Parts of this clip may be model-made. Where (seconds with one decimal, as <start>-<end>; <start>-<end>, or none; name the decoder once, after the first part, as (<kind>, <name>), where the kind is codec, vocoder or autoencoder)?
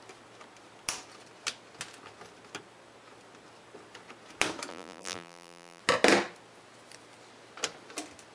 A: 4.7-5.8 (vocoder, BigVGAN v2)